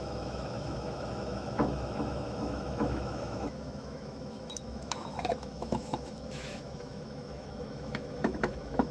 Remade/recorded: remade